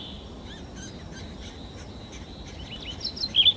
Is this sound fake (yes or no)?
no